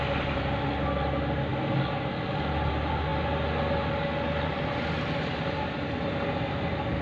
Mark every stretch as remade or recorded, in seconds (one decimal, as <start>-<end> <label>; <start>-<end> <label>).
0.0-7.0 recorded